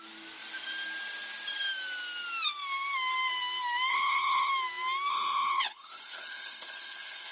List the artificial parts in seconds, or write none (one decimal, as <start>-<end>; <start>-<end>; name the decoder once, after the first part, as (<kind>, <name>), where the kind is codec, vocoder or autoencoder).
3.9-4.5 (codec, HILCodec); 5.1-7.3